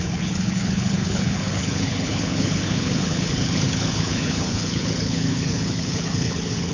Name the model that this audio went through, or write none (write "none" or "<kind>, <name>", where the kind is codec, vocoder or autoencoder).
codec, HILCodec